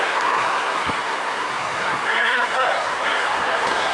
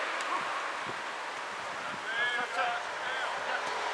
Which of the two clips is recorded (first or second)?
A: second